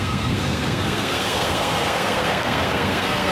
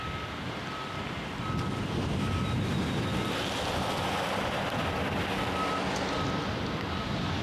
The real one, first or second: second